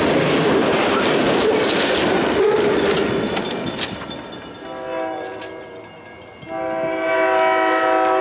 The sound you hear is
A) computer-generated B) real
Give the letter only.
B